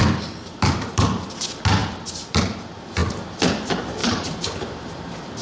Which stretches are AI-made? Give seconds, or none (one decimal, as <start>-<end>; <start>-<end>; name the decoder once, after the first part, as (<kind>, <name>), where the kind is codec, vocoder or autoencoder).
1.8-2.5 (vocoder, BigVGAN v2); 3.0-3.5; 4.0-5.0